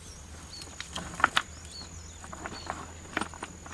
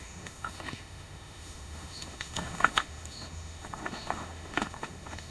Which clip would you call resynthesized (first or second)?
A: second